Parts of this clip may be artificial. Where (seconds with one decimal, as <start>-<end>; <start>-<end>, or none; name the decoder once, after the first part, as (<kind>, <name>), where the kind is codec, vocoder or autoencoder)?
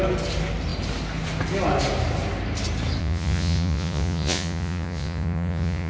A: 3.0-5.9 (vocoder, Vocos)